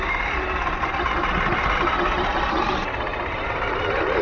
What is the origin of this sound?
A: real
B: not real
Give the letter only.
A